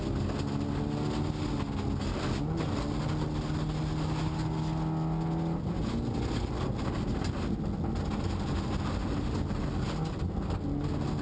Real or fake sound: real